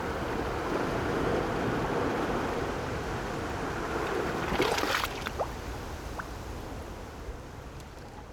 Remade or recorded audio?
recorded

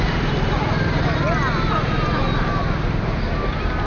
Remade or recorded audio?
recorded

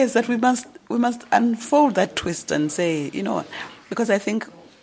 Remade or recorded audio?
recorded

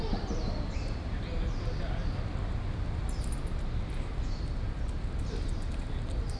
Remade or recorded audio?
recorded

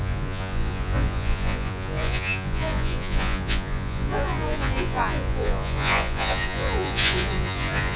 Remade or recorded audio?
remade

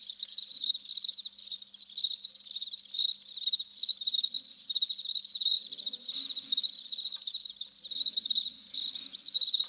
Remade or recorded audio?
recorded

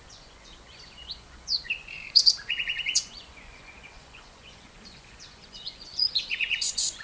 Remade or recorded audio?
remade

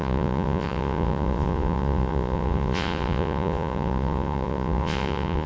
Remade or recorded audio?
remade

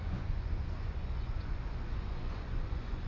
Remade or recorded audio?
remade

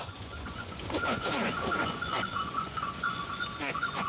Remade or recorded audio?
remade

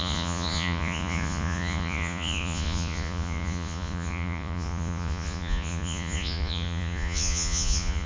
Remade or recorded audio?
remade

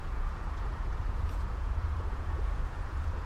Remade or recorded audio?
remade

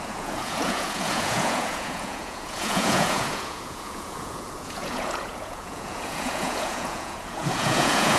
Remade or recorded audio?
remade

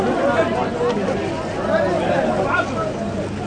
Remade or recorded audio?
recorded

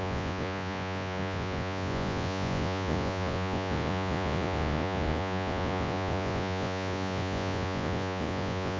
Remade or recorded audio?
remade